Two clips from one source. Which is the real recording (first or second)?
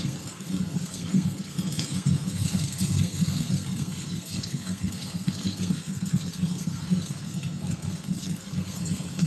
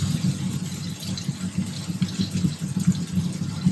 second